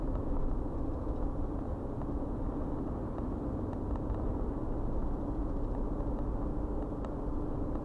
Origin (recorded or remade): recorded